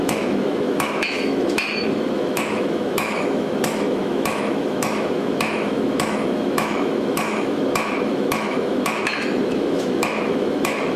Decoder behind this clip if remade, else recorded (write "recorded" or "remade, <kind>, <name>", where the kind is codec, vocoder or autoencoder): remade, autoencoder, DAC-VAE